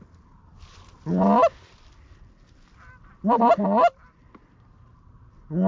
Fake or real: real